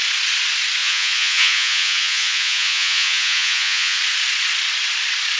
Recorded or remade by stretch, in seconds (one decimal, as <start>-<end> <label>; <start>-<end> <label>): 0.0-0.8 recorded; 0.8-4.0 remade; 4.0-5.4 recorded